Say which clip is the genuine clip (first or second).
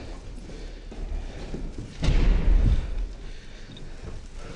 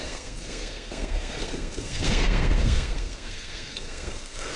first